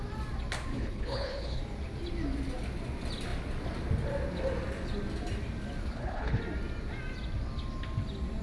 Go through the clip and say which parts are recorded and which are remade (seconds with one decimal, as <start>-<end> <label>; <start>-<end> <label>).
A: 0.0-0.7 recorded; 0.7-1.6 remade; 1.6-5.8 recorded; 5.8-6.4 remade; 6.4-8.4 recorded